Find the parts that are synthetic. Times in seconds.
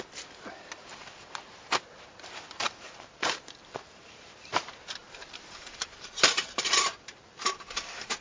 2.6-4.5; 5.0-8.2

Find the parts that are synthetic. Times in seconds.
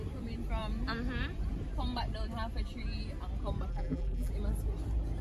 3.7-4.3